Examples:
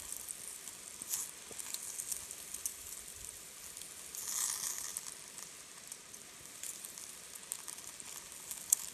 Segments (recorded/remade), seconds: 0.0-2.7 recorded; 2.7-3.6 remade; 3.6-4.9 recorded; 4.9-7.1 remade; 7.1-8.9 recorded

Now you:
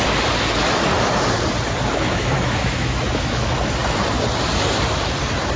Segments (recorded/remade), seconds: 0.0-1.9 recorded; 1.9-3.5 remade; 3.5-5.6 recorded

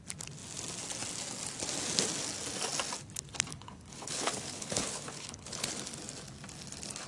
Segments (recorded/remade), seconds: 0.0-3.5 recorded; 3.5-5.7 remade; 5.7-7.1 recorded

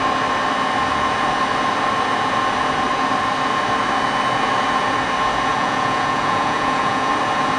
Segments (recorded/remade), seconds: 0.0-5.5 recorded; 5.5-7.1 remade; 7.1-7.6 recorded

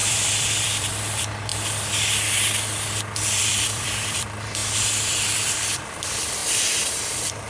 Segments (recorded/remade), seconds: 0.0-1.5 remade; 1.5-3.4 recorded; 3.4-6.4 remade; 6.4-7.1 recorded; 7.1-7.5 remade

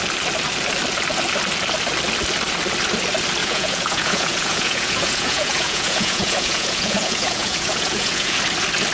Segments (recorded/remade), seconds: 0.0-3.4 recorded; 3.4-8.4 remade; 8.4-8.9 recorded